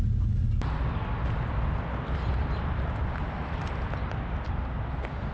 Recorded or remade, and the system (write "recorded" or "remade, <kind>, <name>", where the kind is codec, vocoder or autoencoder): recorded